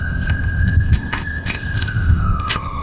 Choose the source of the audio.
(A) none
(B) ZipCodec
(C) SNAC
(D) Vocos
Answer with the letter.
B